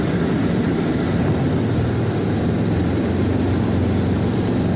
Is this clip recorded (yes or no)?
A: yes